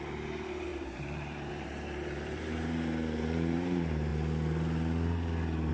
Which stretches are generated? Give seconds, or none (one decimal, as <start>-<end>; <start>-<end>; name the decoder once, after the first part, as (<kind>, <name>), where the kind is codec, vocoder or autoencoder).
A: 0.0-4.1 (vocoder, BigVGAN v2)